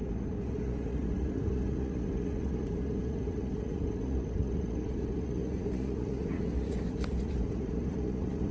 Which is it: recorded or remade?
remade